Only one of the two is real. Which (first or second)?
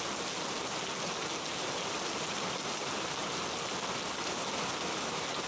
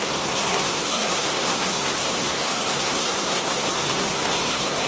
first